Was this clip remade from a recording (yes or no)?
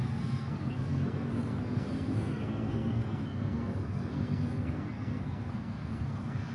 yes